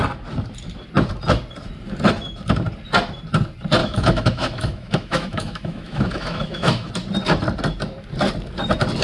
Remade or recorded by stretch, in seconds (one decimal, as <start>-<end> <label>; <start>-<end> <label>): 0.0-3.8 recorded; 3.8-6.9 remade; 6.9-9.0 recorded